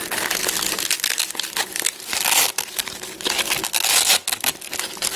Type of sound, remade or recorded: recorded